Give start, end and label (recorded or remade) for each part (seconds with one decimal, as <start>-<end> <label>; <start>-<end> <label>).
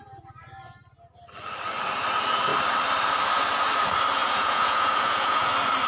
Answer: 0.0-4.2 recorded; 4.2-5.5 remade; 5.5-5.9 recorded